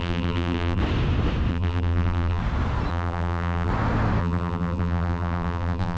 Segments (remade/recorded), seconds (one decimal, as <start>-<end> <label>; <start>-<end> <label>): 0.0-0.8 remade; 0.8-1.5 recorded; 1.5-2.4 remade; 2.4-2.9 recorded; 2.9-3.7 remade; 3.7-4.2 recorded; 4.2-6.0 remade